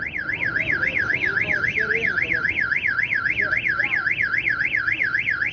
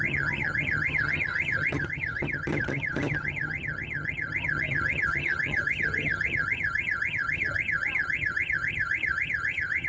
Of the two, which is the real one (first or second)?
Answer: first